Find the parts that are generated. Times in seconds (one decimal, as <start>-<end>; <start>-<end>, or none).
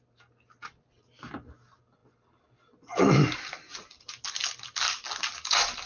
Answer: none